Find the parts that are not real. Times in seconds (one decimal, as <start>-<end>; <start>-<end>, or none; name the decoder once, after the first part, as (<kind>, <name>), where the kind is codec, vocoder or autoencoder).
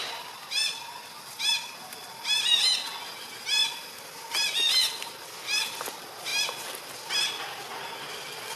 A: none